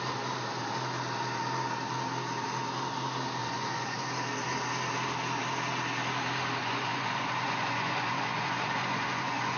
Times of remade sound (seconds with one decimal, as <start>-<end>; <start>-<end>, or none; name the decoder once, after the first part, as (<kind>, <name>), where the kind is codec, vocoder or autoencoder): 3.4-4.0 (vocoder, Vocos); 6.6-9.6